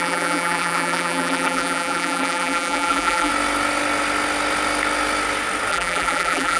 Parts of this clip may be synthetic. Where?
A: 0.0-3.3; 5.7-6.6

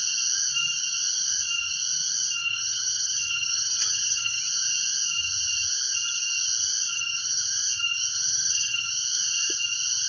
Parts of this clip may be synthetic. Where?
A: 2.4-4.4; 6.9-7.4; 8.1-8.9